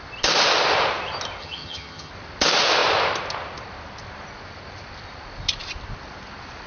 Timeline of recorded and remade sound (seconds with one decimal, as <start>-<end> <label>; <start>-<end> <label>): 0.0-1.4 recorded; 1.4-2.1 remade; 2.1-6.7 recorded